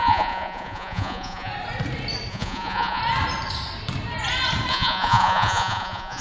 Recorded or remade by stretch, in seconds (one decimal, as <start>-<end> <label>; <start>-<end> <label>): 0.0-1.5 remade; 1.5-2.3 recorded; 2.3-3.0 remade; 3.0-4.7 recorded; 4.7-6.2 remade